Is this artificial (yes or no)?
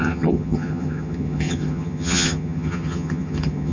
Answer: yes